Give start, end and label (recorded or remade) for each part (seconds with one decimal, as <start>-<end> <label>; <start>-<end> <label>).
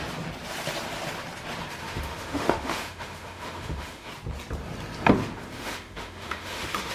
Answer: 0.0-1.8 recorded; 1.8-4.1 remade; 4.1-5.2 recorded; 5.2-6.9 remade